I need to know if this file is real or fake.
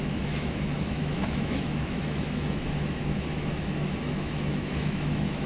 fake